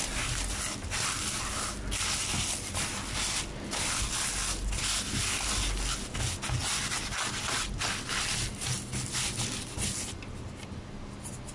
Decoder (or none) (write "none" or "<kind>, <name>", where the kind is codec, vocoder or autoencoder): none